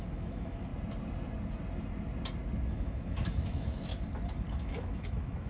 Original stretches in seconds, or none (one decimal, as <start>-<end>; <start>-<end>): 0.7-2.7; 3.9-4.5